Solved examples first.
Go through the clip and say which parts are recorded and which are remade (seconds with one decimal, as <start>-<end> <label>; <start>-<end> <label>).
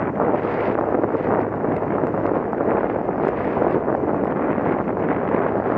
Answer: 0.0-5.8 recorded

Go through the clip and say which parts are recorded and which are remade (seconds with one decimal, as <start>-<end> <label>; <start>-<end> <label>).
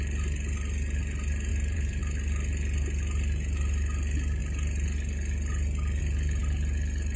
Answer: 0.0-1.5 recorded; 1.5-2.0 remade; 2.0-7.2 recorded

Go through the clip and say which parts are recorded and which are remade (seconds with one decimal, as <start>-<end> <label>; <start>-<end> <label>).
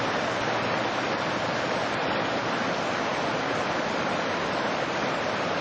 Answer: 0.0-5.6 recorded